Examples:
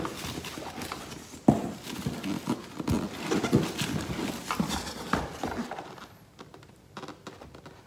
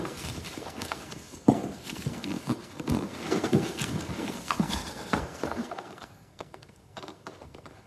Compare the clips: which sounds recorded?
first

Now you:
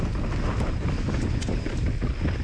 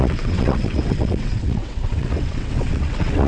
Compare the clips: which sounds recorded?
first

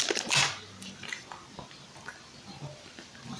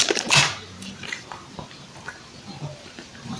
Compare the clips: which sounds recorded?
first